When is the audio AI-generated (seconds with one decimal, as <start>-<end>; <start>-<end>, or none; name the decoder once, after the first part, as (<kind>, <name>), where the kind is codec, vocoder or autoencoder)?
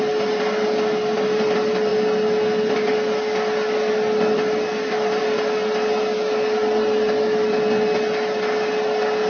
none